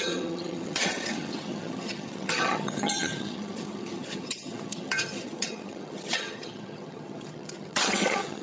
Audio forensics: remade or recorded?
remade